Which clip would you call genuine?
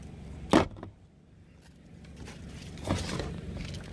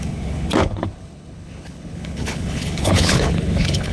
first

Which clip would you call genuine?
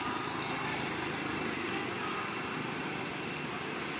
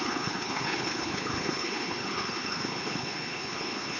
first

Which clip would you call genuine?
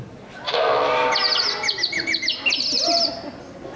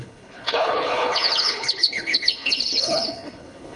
first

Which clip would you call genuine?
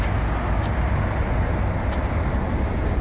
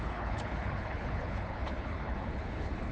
first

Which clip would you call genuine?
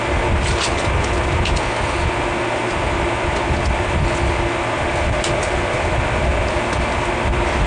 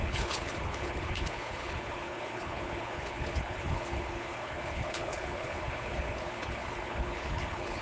first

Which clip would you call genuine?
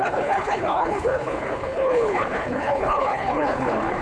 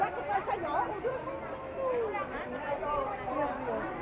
second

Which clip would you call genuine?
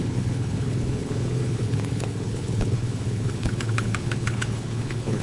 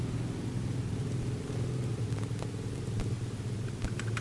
second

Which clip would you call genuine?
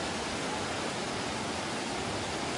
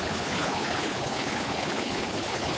first